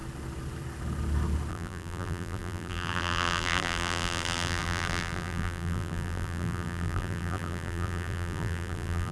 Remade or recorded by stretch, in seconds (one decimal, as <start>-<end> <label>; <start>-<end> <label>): 0.0-1.5 recorded; 1.5-9.1 remade